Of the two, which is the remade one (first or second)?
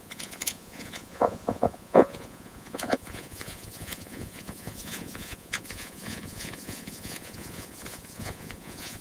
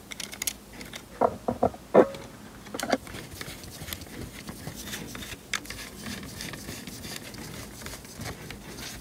first